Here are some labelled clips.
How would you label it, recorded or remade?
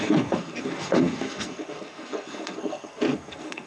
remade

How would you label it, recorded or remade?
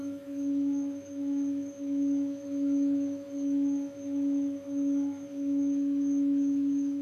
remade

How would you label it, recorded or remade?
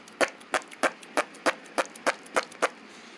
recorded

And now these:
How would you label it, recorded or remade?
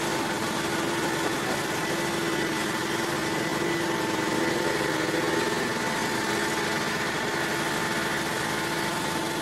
recorded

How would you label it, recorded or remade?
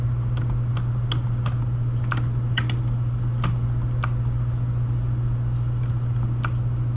recorded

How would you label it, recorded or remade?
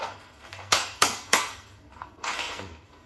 remade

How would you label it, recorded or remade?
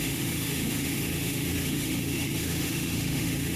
remade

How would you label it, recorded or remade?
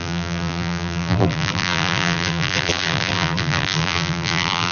remade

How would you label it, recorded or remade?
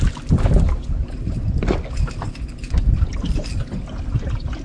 recorded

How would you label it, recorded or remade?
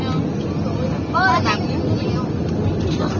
recorded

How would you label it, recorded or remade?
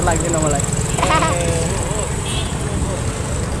recorded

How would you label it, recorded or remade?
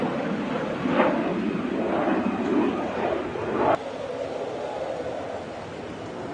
recorded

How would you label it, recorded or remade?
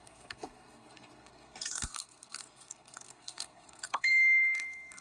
remade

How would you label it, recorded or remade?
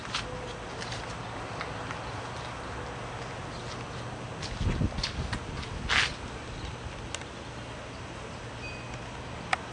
recorded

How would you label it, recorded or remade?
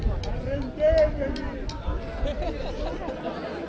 recorded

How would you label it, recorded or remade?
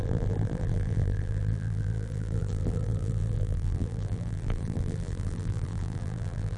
remade